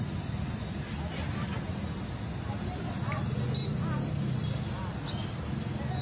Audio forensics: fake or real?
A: real